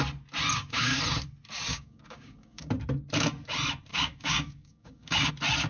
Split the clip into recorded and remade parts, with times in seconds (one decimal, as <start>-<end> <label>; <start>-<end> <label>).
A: 0.0-0.5 recorded; 0.5-1.0 remade; 1.0-1.7 recorded; 1.7-2.7 remade; 2.7-3.9 recorded; 3.9-5.3 remade; 5.3-5.7 recorded